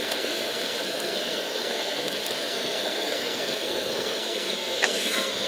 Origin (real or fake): fake